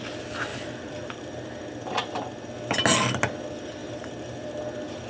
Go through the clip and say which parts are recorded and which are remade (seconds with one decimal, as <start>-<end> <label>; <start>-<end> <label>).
0.0-0.5 recorded; 0.5-1.5 remade; 1.5-3.8 recorded; 3.8-4.6 remade; 4.6-5.1 recorded

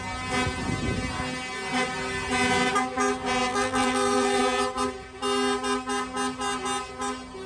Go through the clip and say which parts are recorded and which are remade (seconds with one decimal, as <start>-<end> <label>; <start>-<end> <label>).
0.0-3.5 recorded; 3.5-4.4 remade; 4.4-7.5 recorded

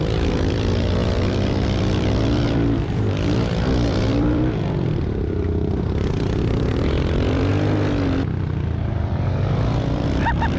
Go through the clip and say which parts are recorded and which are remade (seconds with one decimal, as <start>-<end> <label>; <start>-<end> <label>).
0.0-7.5 remade; 7.5-8.8 recorded; 8.8-10.6 remade